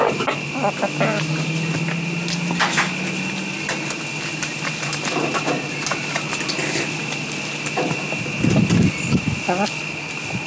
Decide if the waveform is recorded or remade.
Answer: recorded